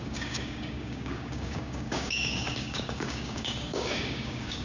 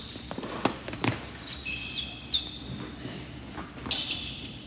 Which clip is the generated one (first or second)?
first